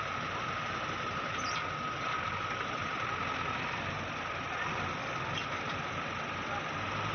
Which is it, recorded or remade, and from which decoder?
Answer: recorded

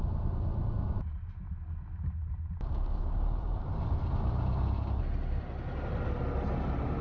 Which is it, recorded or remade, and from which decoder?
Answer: recorded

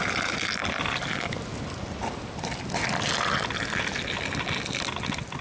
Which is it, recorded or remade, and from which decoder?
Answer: recorded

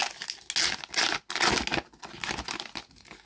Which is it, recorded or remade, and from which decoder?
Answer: recorded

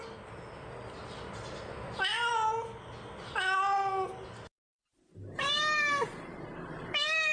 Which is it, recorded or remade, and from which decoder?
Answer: recorded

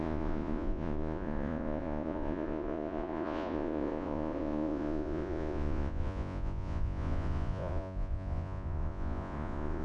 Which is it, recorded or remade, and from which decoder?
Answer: remade, vocoder, Vocos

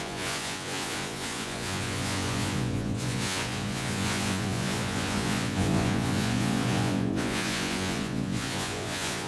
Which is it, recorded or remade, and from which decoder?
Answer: remade, vocoder, Vocos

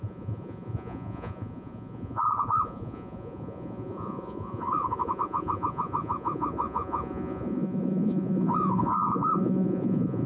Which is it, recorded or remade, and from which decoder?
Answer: remade, vocoder, Vocos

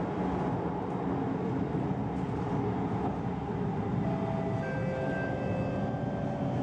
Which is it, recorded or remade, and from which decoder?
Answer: recorded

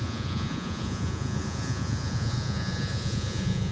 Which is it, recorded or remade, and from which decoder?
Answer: remade, vocoder, Vocos